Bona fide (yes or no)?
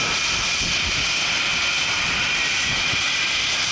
yes